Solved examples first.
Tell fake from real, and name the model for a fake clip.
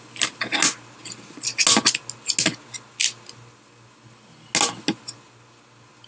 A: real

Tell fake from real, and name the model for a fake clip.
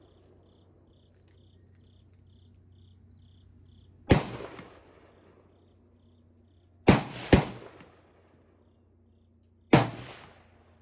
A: real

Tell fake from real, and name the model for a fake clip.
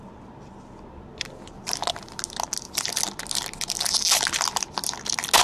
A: real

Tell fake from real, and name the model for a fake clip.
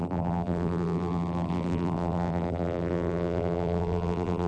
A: fake, vocoder, BigVGAN v2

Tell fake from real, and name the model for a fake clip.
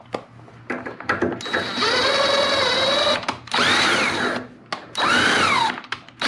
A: real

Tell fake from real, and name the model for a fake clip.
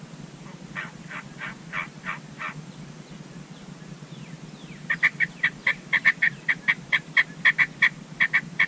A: real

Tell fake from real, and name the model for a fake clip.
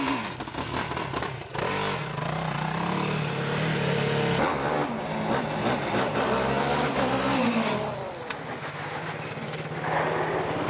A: real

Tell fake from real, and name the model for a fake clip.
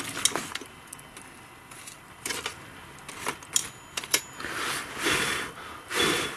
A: real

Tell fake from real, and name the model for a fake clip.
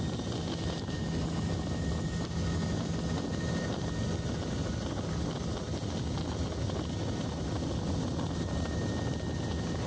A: real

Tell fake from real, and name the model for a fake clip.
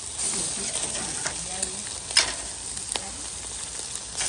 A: real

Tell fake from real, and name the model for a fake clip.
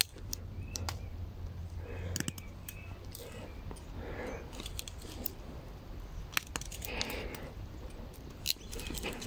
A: real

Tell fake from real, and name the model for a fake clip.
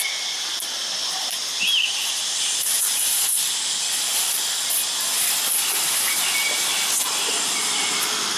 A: real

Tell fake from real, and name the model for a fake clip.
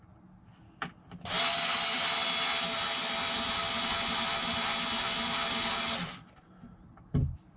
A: real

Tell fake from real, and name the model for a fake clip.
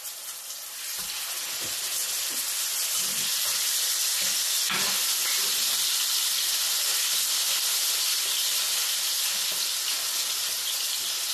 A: real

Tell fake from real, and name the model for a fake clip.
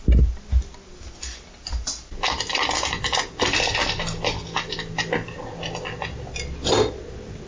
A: real